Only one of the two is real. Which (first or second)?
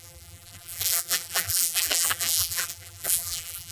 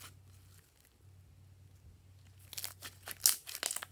second